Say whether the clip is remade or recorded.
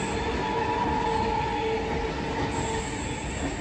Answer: recorded